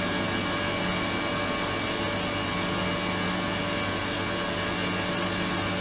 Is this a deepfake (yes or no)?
no